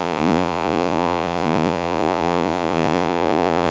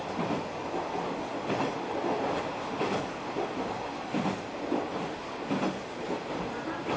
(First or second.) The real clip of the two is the second